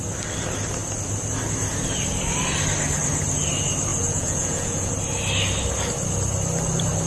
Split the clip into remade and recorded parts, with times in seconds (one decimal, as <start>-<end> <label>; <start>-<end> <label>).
0.0-3.9 recorded; 3.9-4.9 remade; 4.9-7.1 recorded